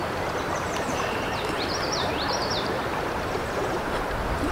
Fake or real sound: fake